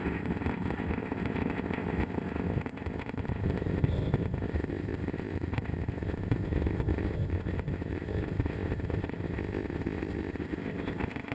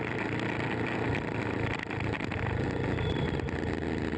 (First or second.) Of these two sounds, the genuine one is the second